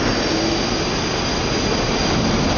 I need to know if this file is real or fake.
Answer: real